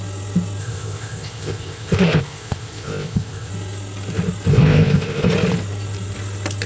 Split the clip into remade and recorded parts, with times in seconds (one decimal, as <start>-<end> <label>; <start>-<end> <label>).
0.0-0.6 recorded; 0.6-3.5 remade; 3.5-4.5 recorded; 4.5-5.3 remade; 5.3-6.7 recorded